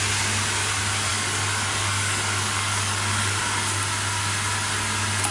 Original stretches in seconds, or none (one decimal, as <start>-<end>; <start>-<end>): 0.0-1.1; 3.4-5.3